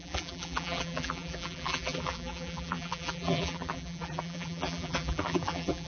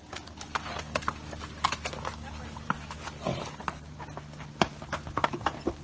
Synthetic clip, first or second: first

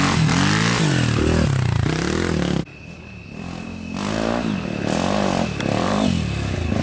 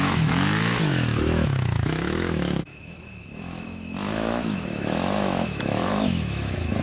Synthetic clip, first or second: second